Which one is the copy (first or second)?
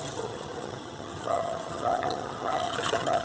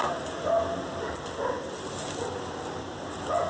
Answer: first